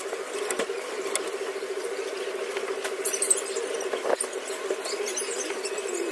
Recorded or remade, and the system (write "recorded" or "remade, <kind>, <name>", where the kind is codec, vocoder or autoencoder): recorded